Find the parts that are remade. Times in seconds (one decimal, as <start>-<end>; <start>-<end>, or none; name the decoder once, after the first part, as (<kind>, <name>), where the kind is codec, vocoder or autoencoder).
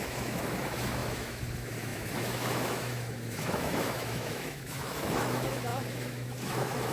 0.0-6.9 (autoencoder, DAC-VAE)